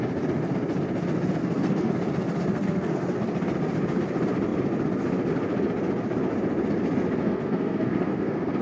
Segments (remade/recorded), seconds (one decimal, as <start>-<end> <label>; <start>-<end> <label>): 0.0-1.4 recorded; 1.4-1.9 remade; 1.9-2.5 recorded; 2.5-3.2 remade; 3.2-7.2 recorded; 7.2-8.6 remade